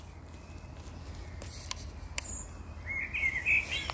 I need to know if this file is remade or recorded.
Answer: recorded